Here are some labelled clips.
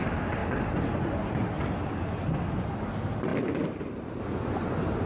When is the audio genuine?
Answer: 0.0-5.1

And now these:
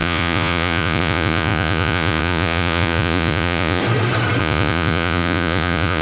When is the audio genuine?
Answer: 3.8-4.4

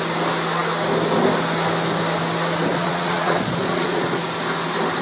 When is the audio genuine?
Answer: 0.0-2.7; 4.2-5.0

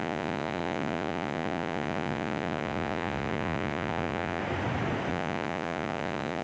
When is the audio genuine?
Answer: 4.4-5.1

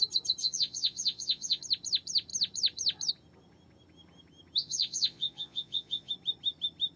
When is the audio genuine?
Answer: 0.0-0.4; 1.6-4.6; 6.1-7.0

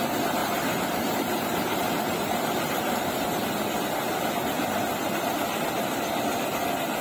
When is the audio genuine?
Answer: 0.0-0.4; 3.2-7.0

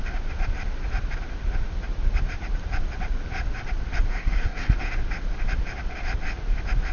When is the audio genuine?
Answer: 0.0-4.1; 4.6-6.9

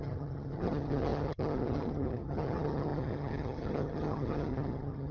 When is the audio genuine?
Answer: none